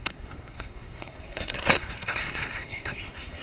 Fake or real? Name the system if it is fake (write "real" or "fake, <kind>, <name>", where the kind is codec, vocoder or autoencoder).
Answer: fake, codec, SNAC